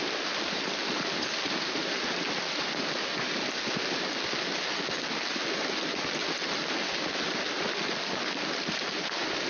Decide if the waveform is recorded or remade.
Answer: recorded